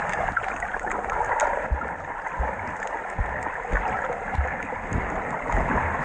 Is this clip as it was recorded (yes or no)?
yes